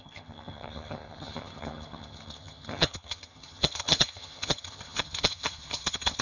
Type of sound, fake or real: fake